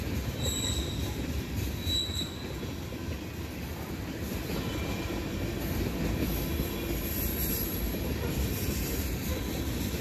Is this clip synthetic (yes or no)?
no